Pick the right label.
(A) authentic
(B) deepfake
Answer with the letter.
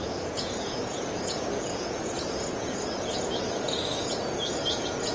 B